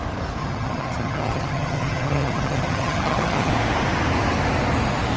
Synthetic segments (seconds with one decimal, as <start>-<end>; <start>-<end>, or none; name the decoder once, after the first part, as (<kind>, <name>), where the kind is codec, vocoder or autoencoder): 0.4-3.5 (vocoder, HiFi-GAN)